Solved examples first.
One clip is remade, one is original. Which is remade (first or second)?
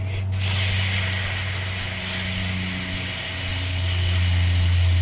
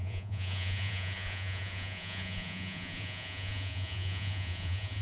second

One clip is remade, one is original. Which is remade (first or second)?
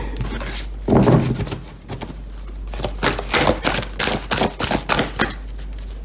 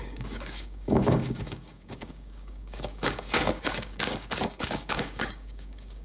second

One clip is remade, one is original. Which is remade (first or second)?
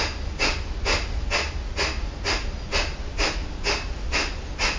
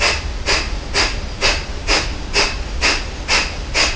second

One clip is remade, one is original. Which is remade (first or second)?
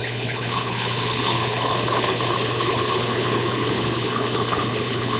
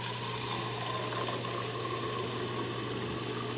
first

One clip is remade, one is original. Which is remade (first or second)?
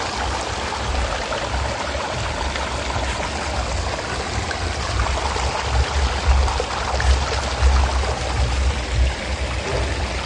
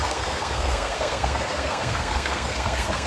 second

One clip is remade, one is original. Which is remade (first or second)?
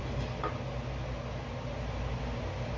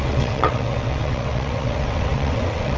second